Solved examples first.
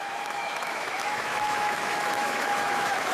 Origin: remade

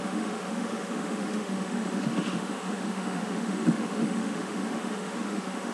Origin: remade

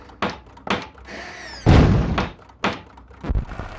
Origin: recorded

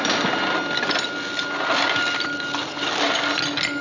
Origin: recorded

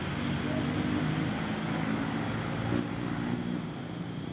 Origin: recorded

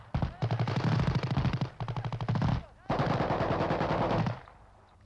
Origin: recorded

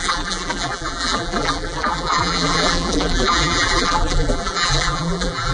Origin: remade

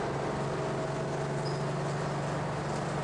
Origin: recorded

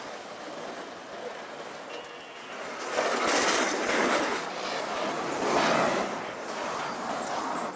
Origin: recorded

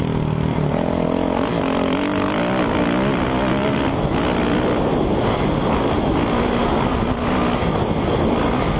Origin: recorded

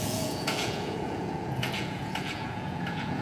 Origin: remade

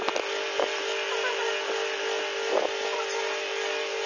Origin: recorded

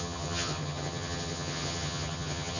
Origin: remade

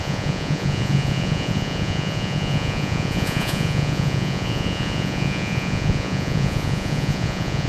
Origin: remade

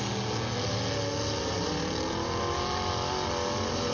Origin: recorded